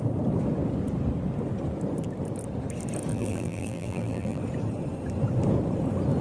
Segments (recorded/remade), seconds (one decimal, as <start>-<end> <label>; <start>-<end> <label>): 0.0-3.1 recorded; 3.1-4.4 remade; 4.4-6.2 recorded